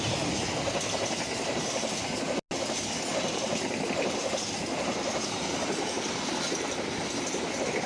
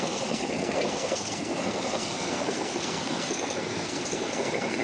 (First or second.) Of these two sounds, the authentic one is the first